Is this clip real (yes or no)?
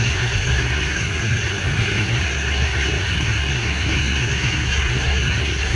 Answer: no